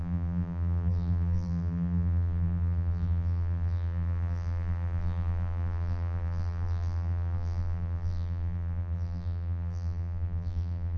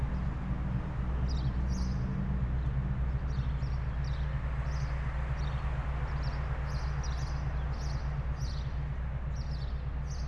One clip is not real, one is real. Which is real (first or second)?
second